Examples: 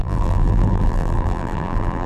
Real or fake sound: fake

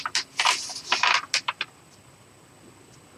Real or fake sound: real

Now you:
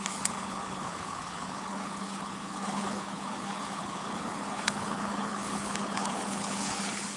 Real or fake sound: fake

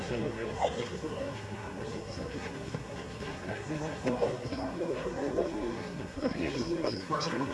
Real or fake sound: fake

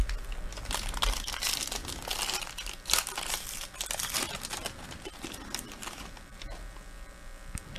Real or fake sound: real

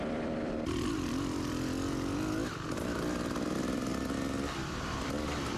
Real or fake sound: fake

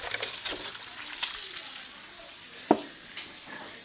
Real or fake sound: real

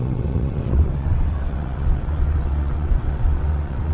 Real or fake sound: fake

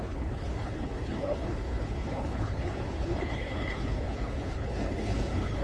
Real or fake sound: fake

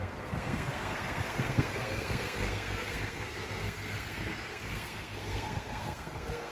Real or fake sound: fake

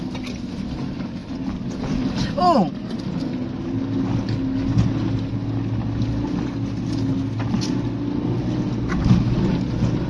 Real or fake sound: real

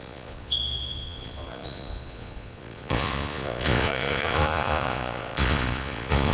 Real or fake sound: fake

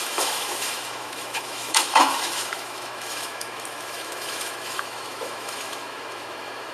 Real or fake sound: fake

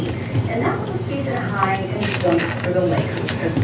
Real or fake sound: real